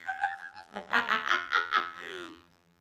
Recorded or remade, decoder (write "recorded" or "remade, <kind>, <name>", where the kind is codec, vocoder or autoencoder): remade, vocoder, BigVGAN v2